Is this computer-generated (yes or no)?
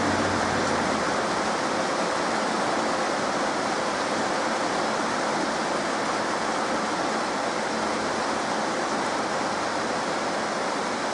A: no